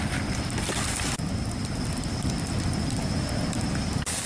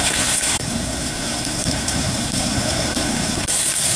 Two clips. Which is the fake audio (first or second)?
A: second